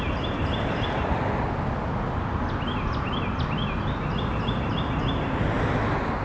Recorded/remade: recorded